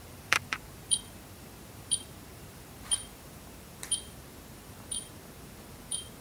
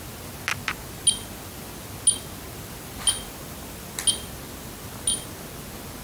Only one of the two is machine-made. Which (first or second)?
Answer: first